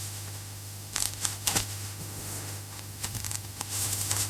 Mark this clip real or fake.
fake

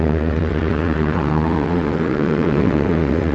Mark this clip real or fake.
fake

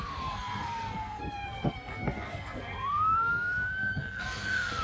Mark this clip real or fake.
fake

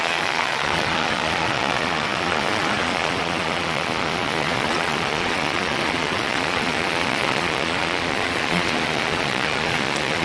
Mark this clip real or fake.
fake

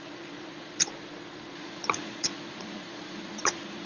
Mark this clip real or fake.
fake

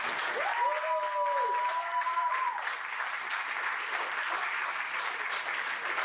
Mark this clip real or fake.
real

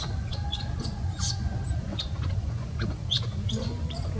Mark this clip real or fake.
fake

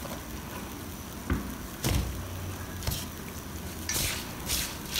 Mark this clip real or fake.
real